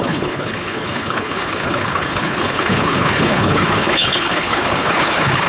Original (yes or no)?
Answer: no